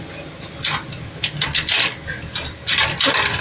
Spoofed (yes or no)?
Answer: no